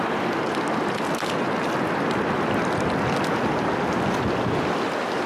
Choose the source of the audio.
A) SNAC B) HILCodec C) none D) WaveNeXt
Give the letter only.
C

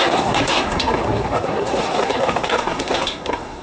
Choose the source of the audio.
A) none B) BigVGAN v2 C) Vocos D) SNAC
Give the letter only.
D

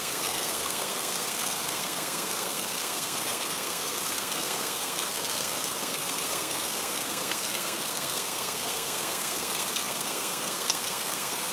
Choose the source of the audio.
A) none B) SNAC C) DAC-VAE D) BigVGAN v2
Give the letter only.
B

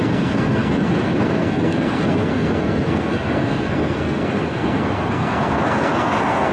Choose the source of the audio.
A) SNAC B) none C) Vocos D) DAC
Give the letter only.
A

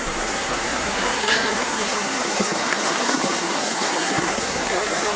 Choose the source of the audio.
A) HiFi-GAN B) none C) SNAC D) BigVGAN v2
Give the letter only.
C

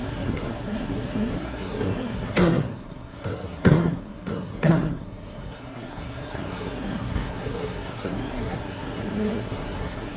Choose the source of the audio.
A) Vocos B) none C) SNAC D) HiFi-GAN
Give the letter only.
C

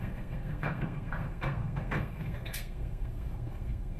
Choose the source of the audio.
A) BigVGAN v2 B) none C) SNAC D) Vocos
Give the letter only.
C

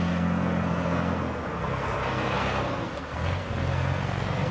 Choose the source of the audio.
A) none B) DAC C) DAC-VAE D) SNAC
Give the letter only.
D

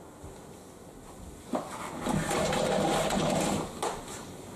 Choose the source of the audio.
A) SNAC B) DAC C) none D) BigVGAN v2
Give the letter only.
C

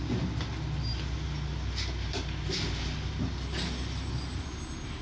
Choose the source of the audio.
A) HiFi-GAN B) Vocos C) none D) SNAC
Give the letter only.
C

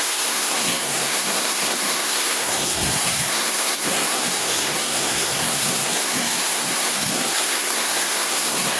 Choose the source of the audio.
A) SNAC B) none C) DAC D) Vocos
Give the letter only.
A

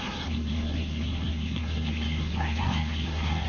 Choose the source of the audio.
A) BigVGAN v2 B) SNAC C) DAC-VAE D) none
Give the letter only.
B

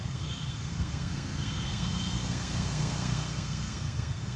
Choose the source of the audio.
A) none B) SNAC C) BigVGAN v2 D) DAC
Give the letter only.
B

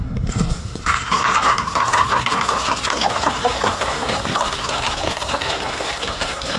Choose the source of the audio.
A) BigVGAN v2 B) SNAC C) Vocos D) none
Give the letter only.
B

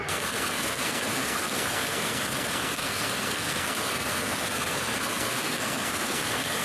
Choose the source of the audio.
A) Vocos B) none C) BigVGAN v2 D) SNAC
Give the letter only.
D